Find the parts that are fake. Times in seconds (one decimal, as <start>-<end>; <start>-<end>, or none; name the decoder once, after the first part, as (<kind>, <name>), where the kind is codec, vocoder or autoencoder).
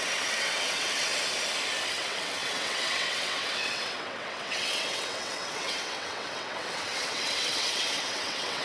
0.0-1.1 (vocoder, WaveNeXt); 1.9-8.6